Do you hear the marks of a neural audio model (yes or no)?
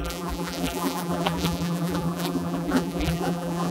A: yes